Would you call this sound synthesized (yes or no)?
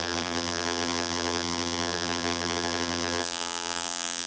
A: yes